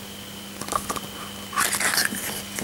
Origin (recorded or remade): recorded